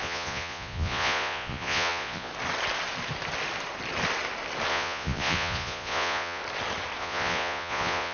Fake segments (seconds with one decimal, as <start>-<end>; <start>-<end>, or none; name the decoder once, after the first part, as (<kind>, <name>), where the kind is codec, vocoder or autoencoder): 0.0-2.3 (vocoder, Vocos); 4.7-6.4; 7.0-8.1